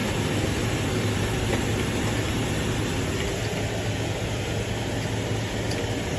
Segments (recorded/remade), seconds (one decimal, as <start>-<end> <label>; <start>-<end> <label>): 0.0-6.2 recorded